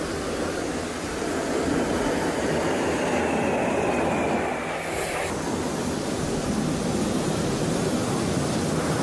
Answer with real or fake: real